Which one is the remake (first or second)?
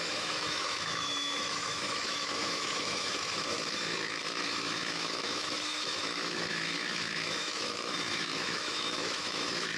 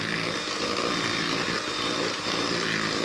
first